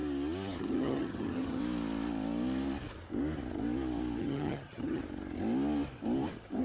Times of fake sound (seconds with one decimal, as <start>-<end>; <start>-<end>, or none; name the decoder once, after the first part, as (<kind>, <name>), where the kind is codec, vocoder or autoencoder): 0.6-1.6 (vocoder, HiFi-GAN); 4.2-5.0